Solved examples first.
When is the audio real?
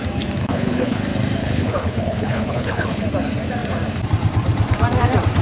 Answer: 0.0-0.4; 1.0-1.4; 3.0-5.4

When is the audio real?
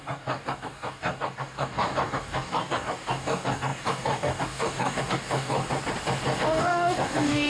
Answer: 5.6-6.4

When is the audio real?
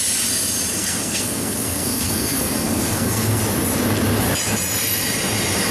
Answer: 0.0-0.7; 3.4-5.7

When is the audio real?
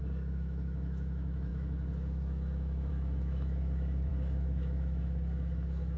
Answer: none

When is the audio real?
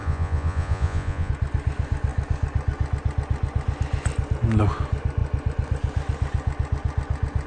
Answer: 1.3-7.5